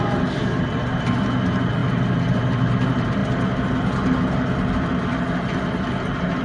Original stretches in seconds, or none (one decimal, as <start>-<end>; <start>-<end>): 0.0-6.4